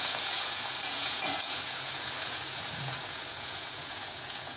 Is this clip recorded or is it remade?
remade